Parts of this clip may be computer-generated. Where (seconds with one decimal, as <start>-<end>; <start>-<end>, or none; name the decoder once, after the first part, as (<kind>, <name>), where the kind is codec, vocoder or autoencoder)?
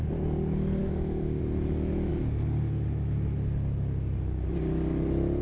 0.8-1.4 (autoencoder, DAC-VAE)